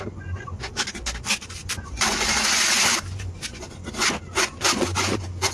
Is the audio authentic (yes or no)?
no